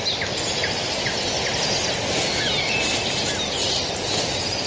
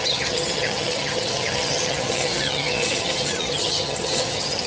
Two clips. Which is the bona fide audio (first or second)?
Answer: first